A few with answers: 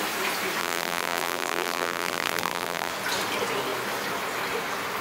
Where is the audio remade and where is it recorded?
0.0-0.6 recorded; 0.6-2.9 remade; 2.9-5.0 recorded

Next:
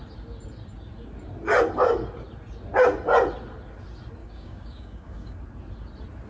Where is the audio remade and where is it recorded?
0.0-4.2 recorded; 4.2-5.4 remade; 5.4-6.3 recorded

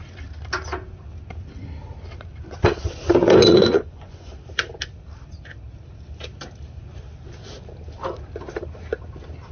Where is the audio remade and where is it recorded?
0.0-3.2 recorded; 3.2-4.3 remade; 4.3-9.5 recorded